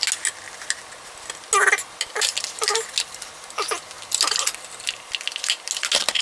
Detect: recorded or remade recorded